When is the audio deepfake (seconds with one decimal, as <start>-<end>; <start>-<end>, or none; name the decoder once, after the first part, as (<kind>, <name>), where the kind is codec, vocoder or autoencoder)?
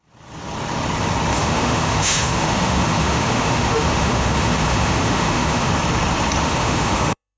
1.3-5.7 (autoencoder, DAC-VAE); 6.4-7.4